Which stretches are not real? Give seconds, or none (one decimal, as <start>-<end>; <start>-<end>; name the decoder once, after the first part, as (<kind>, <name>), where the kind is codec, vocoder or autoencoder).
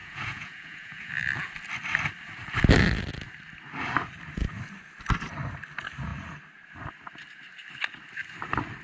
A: 0.0-1.1 (vocoder, Vocos)